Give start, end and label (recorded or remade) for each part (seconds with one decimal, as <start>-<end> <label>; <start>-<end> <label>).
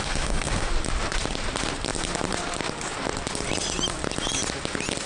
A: 0.0-0.7 remade; 0.7-5.1 recorded